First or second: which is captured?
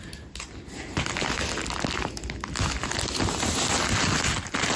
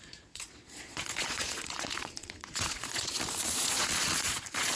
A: first